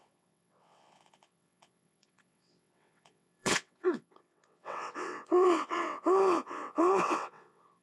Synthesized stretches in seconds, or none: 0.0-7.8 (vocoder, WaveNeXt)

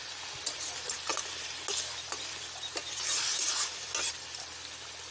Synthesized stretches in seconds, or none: none

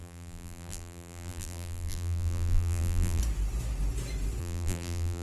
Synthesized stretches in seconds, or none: 0.0-3.2 (vocoder, BigVGAN v2); 4.4-5.2